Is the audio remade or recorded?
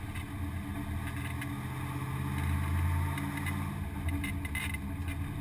recorded